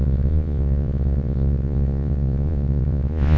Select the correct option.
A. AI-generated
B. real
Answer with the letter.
A